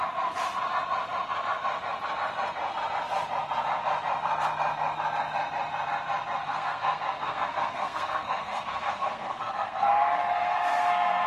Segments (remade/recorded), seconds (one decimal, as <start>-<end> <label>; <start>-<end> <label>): 0.0-6.4 recorded; 6.4-11.3 remade